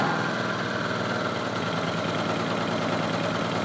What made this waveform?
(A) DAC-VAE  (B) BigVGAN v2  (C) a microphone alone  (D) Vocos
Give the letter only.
C